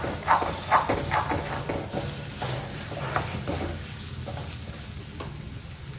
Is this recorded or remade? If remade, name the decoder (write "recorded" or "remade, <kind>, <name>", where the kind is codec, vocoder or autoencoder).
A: recorded